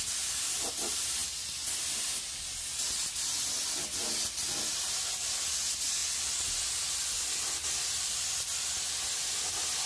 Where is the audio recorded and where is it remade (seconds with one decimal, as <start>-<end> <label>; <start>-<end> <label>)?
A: 0.0-9.9 recorded